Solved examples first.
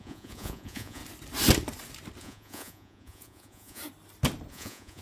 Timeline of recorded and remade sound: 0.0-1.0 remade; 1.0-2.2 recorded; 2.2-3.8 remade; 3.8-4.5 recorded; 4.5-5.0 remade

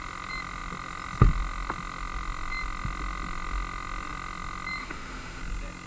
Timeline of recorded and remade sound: 0.0-4.8 recorded; 4.8-5.4 remade; 5.4-5.9 recorded

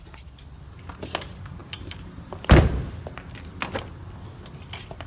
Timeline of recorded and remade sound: 0.0-5.1 recorded

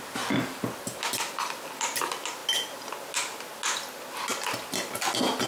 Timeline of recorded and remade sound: 0.0-5.5 recorded